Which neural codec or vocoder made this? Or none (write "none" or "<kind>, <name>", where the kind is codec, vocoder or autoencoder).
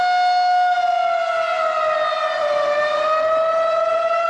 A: none